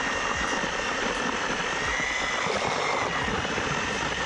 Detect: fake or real real